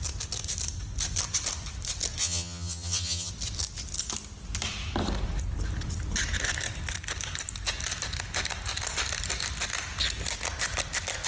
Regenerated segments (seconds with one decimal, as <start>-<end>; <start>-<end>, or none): 2.2-3.3